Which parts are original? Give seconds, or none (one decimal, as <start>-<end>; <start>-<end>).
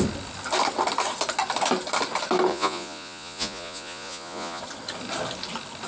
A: 0.0-2.5; 4.6-5.9